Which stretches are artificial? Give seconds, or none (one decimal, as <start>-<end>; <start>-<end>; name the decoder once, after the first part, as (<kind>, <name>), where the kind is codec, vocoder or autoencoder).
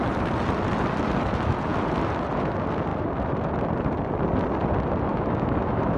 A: 5.1-6.0 (autoencoder, DAC-VAE)